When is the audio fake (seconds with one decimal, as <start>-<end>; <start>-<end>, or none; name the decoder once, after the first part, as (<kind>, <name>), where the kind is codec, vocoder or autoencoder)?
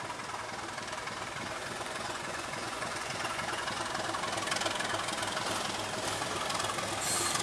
1.6-3.8 (vocoder, Vocos)